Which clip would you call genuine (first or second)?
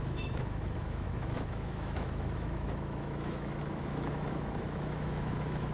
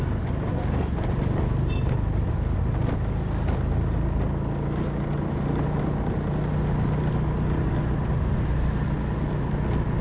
second